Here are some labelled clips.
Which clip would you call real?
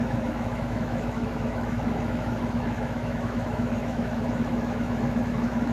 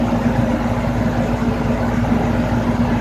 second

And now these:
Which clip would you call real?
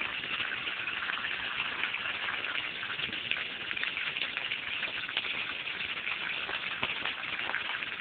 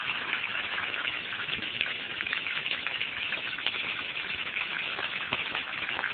first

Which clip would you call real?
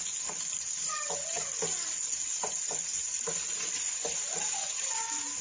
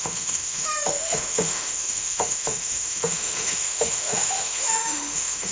first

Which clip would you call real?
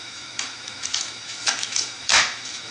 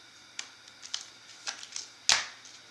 second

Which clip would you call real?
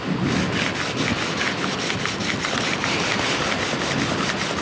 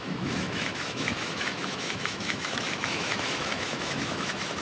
first